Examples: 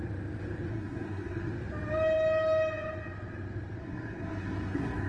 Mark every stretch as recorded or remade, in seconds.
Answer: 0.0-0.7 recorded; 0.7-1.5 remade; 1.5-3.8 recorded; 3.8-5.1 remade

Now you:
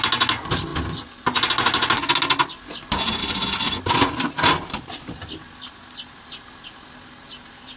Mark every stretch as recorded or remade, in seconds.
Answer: 0.0-7.8 recorded

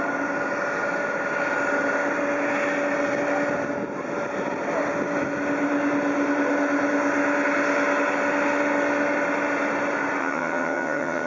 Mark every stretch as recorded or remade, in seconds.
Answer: 0.0-10.2 recorded; 10.2-11.3 remade

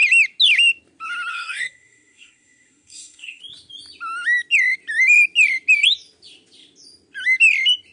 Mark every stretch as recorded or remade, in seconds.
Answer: 0.0-1.3 recorded; 1.3-3.4 remade; 3.4-7.9 recorded

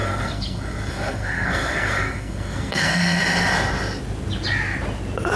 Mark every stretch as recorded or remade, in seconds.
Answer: 0.0-3.2 remade; 3.2-5.4 recorded

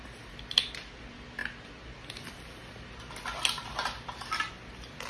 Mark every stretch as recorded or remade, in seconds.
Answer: 0.0-5.1 recorded

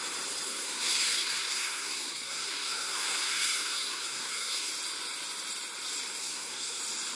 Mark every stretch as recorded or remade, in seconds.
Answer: 0.0-0.5 recorded; 0.5-4.7 remade; 4.7-6.2 recorded; 6.2-6.8 remade; 6.8-7.2 recorded